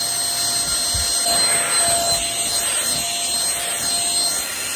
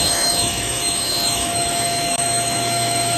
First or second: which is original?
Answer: first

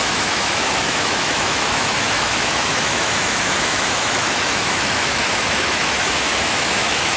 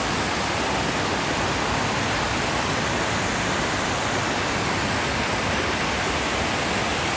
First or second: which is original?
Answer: second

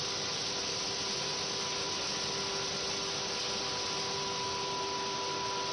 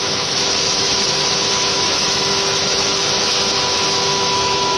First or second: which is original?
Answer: first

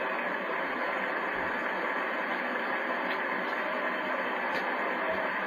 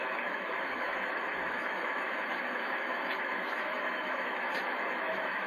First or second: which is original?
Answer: first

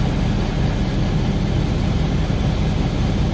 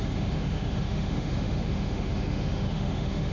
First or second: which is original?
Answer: first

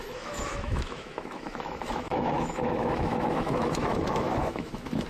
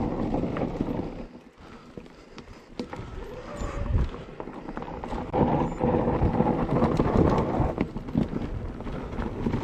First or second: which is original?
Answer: second